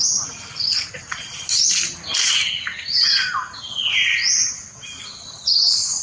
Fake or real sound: real